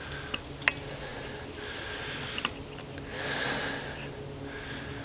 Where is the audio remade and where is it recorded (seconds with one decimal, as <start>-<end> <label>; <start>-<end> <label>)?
0.0-5.0 recorded